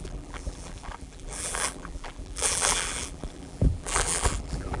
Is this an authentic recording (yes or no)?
no